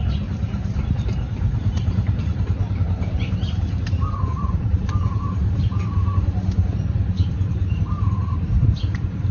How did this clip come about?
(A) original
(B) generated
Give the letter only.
B